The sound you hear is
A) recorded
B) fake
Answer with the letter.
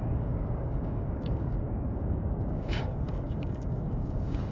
B